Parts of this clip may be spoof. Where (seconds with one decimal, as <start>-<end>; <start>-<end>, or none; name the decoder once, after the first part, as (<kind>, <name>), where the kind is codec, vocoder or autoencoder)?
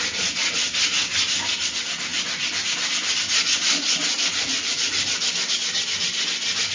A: none